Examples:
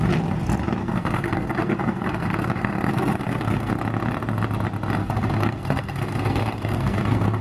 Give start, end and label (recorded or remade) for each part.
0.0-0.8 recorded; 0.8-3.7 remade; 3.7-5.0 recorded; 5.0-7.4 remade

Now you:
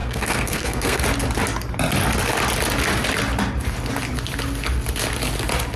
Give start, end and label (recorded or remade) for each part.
0.0-1.0 remade; 1.0-5.8 recorded

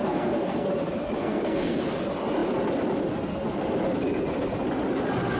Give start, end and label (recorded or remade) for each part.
0.0-0.7 remade; 0.7-1.2 recorded; 1.2-1.8 remade; 1.8-5.4 recorded

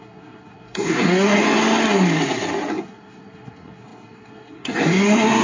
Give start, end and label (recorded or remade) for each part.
0.0-1.4 remade; 1.4-2.7 recorded; 2.7-5.4 remade

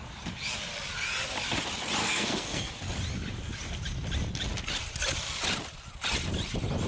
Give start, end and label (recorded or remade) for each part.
0.0-2.0 recorded; 2.0-2.7 remade; 2.7-6.9 recorded